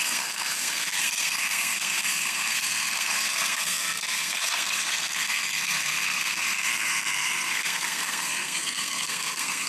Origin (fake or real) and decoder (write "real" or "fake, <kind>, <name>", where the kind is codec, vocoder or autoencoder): fake, codec, SNAC